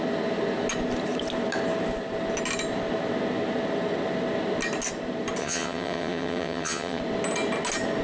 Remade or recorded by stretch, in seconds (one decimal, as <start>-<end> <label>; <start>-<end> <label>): 0.0-5.4 recorded; 5.4-7.0 remade; 7.0-8.0 recorded